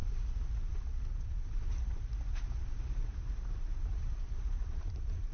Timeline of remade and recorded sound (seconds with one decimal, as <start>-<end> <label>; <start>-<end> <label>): 0.0-5.3 remade